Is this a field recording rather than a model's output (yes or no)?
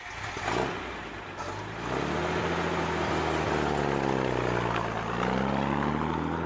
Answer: yes